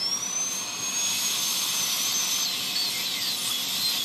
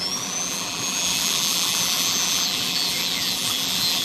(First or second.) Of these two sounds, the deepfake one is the second